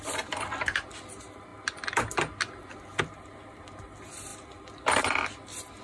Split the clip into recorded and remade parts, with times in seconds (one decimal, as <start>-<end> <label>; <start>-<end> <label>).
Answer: 0.0-1.5 remade; 1.5-3.0 recorded; 3.0-5.8 remade